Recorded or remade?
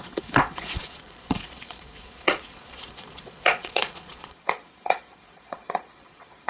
remade